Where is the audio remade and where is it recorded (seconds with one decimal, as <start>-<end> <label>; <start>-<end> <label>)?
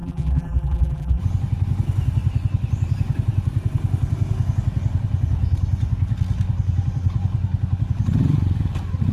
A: 0.0-1.2 remade; 1.2-9.1 recorded